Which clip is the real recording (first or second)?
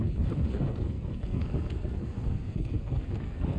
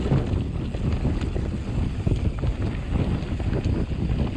second